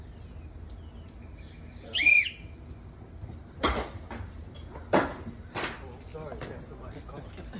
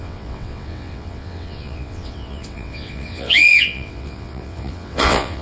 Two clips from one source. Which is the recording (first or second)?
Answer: first